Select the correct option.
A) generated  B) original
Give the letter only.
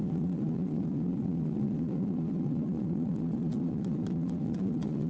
A